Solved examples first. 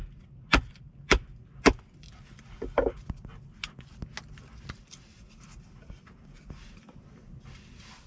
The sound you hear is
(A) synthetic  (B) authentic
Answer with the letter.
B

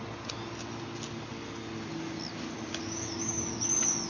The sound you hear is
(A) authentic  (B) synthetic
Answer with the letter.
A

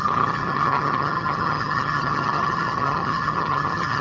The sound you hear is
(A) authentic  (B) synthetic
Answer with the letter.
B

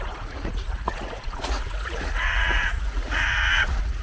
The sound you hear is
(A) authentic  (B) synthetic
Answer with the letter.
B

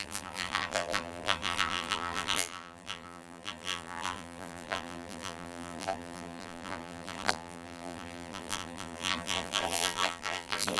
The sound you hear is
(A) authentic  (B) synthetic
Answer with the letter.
B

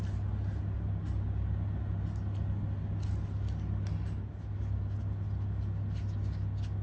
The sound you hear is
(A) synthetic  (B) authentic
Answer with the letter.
B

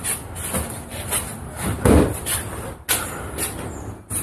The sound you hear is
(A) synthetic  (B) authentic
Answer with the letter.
B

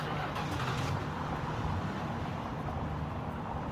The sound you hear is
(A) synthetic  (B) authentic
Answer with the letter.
A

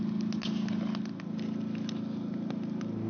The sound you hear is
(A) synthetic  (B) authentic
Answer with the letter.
B